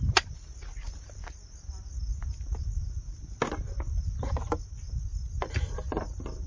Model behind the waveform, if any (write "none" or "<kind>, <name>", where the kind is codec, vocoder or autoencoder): none